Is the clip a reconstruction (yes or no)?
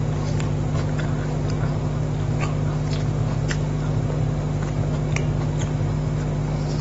no